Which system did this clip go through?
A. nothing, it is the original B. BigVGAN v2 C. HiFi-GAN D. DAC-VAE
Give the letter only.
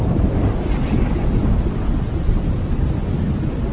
A